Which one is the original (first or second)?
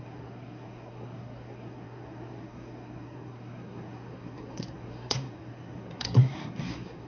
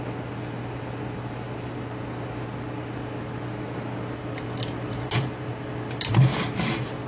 second